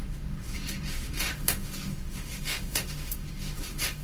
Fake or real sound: fake